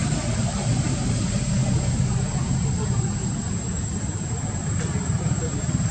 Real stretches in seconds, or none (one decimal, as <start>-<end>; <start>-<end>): 0.0-0.7